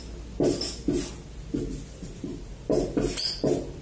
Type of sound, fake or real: real